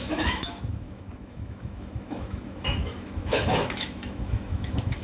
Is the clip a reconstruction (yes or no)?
yes